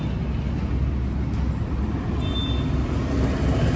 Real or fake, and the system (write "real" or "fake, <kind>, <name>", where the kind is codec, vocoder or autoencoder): real